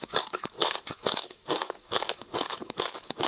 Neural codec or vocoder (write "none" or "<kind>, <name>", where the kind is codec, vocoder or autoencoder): codec, DAC